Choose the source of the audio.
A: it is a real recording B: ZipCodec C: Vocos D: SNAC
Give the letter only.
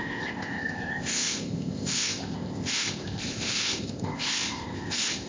B